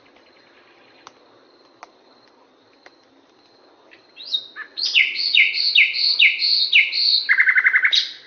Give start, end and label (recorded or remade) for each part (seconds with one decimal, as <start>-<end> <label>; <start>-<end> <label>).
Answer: 0.0-4.7 recorded; 4.7-5.6 remade; 5.6-8.3 recorded